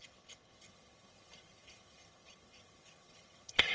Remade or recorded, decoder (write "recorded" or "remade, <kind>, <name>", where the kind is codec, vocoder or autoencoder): remade, vocoder, HiFi-GAN